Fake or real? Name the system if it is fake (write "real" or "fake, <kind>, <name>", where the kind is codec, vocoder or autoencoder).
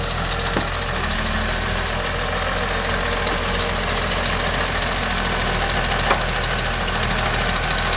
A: real